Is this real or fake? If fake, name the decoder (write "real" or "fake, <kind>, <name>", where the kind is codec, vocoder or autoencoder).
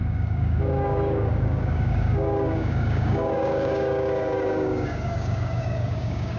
fake, codec, DAC